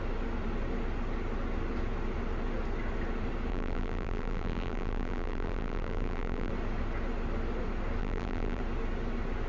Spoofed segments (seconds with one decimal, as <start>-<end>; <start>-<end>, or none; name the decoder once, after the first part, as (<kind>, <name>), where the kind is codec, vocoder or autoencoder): 3.5-6.5 (vocoder, BigVGAN v2); 8.0-8.6